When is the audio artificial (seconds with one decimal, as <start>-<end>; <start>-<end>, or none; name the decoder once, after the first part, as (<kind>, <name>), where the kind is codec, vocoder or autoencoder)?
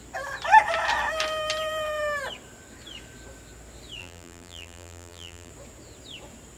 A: 4.0-5.5 (vocoder, BigVGAN v2)